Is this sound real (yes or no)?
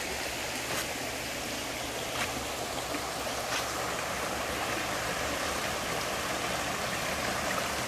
yes